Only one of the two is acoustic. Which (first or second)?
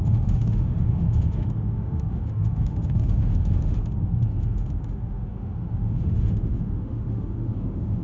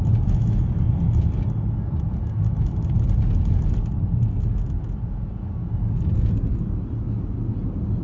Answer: second